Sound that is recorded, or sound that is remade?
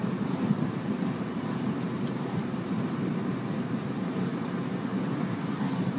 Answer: remade